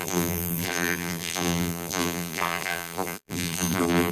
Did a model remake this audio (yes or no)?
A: yes